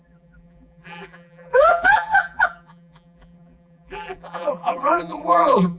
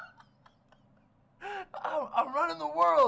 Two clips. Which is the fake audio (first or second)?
first